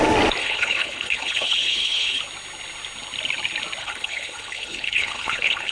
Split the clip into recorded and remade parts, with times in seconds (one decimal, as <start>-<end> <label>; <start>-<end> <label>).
0.0-0.4 recorded; 0.4-2.2 remade; 2.2-3.8 recorded; 3.8-5.7 remade